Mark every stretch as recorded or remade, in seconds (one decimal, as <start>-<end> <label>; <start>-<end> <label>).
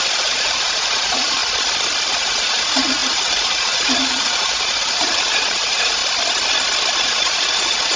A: 0.0-1.4 remade; 1.4-2.1 recorded; 2.1-6.0 remade; 6.0-7.0 recorded; 7.0-8.0 remade